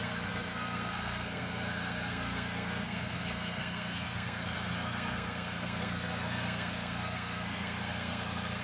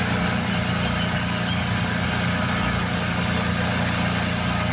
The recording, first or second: second